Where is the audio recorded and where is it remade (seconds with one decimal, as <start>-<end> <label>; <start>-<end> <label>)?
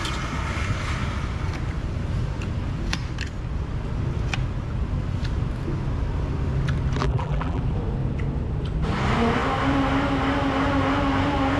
0.0-7.0 recorded; 7.0-7.6 remade; 7.6-11.6 recorded